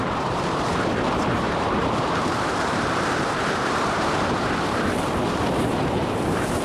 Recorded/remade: remade